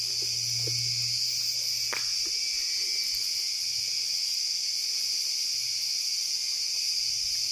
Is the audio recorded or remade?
recorded